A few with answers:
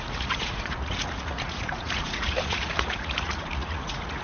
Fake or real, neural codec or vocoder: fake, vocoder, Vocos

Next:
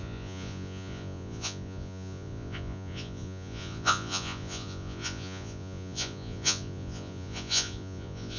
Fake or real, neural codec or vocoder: fake, vocoder, Vocos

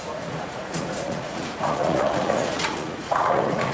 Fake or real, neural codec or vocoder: fake, vocoder, Vocos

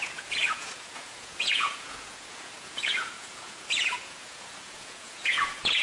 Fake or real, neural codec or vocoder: fake, vocoder, Vocos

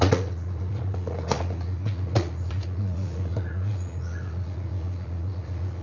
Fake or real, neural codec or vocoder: fake, vocoder, Vocos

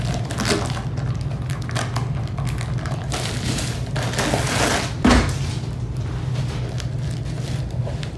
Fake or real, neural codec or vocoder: real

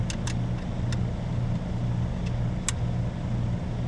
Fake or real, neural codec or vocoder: real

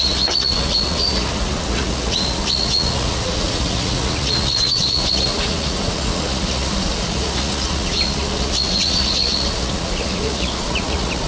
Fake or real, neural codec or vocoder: fake, vocoder, Vocos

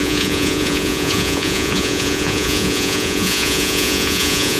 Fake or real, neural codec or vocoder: fake, vocoder, Vocos